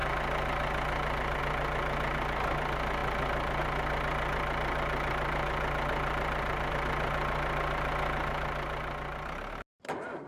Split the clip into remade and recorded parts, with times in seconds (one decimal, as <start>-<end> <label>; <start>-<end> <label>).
0.0-10.3 recorded